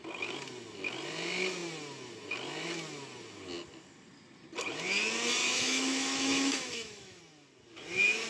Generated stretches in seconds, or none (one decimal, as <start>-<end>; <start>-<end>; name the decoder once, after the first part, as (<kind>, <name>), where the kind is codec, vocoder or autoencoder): 5.4-7.2 (autoencoder, DAC-VAE)